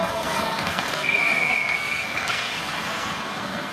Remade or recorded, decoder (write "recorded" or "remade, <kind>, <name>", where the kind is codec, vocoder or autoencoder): remade, codec, SNAC